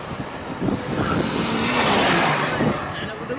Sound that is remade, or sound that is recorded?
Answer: recorded